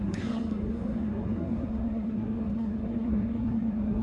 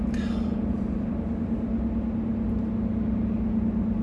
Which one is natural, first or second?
second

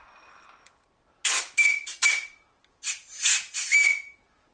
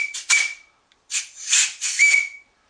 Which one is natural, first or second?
first